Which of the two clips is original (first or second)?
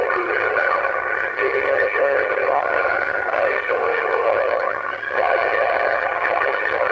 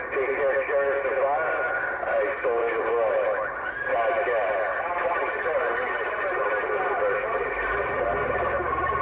second